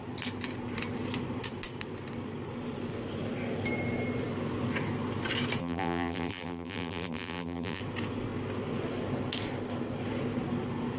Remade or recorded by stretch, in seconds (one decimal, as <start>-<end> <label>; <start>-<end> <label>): 0.0-5.6 recorded; 5.6-7.8 remade; 7.8-11.0 recorded